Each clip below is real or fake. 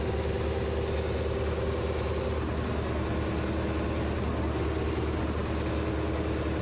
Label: real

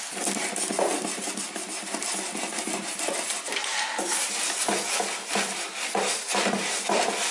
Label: real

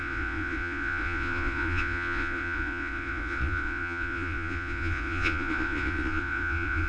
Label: fake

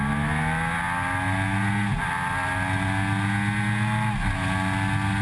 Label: real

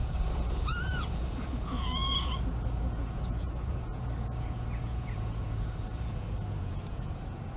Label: fake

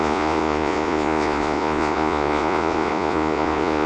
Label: fake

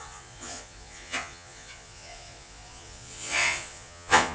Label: fake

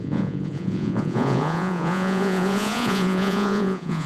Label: fake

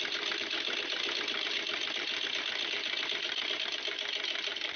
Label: real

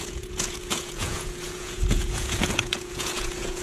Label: fake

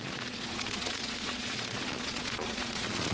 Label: fake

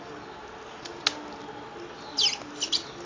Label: real